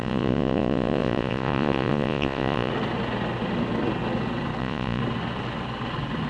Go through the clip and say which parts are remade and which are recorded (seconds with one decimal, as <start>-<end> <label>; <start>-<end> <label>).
0.0-2.7 remade; 2.7-4.6 recorded; 4.6-5.0 remade; 5.0-6.3 recorded